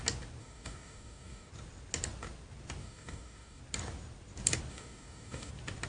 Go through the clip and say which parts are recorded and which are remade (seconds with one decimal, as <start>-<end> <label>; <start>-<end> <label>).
0.0-0.4 recorded; 0.4-1.5 remade; 1.5-2.8 recorded; 2.8-3.6 remade; 3.6-4.7 recorded; 4.7-5.5 remade; 5.5-5.9 recorded